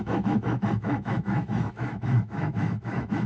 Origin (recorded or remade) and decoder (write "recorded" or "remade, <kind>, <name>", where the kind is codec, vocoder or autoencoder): remade, autoencoder, DAC-VAE